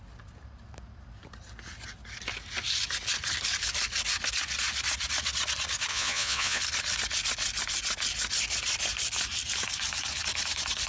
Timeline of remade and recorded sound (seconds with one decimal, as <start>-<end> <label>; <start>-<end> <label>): 0.0-5.9 recorded; 5.9-6.6 remade; 6.6-10.9 recorded